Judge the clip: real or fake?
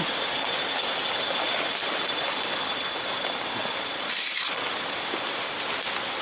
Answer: real